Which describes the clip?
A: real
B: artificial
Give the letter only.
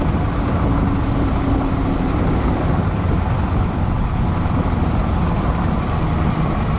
B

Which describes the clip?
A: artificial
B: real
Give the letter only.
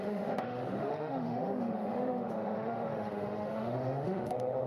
A